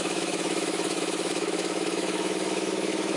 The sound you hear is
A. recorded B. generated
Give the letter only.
B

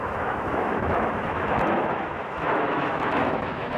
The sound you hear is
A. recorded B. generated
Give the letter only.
B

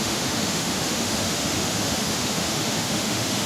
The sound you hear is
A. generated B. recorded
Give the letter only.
A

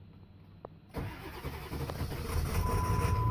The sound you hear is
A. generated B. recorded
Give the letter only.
B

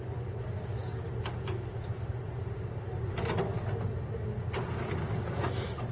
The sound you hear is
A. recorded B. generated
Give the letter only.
A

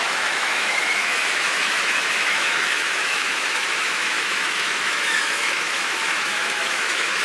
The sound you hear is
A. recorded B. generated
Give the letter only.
B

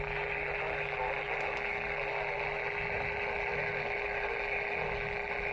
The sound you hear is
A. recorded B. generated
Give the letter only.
A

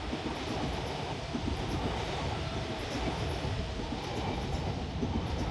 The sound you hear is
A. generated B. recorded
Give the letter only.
B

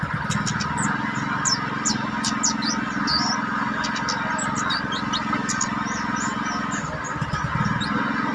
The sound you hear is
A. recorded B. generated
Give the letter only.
A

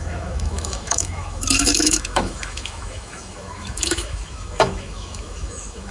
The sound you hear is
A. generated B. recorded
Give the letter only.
A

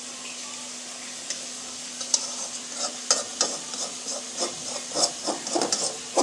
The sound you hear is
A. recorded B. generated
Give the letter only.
A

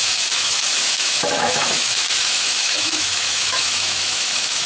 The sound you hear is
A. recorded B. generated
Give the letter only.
B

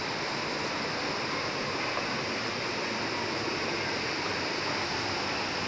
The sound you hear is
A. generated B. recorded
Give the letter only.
B